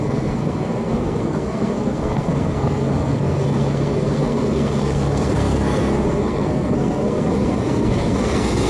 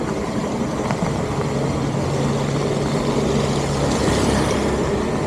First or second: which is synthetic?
first